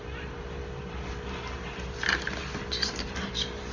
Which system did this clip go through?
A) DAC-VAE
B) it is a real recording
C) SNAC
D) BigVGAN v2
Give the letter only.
B